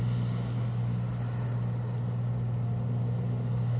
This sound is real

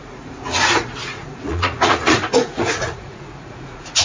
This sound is fake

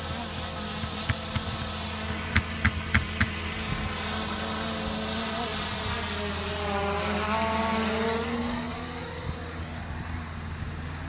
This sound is real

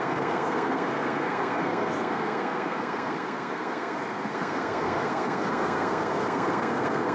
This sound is fake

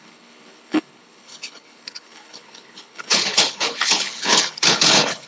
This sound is fake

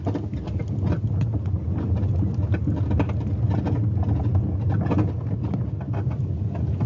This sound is real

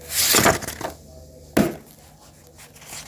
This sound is real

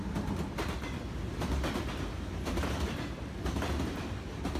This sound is real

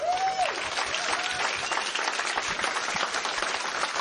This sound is real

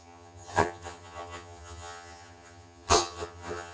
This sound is fake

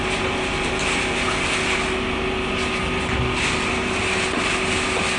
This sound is real